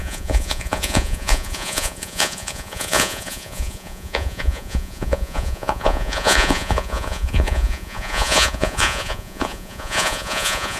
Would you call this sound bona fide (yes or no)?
no